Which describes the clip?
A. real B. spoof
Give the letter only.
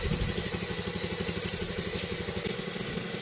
A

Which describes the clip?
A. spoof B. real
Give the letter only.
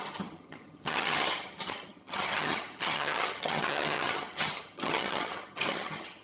A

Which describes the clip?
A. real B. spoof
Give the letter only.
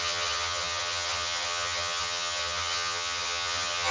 B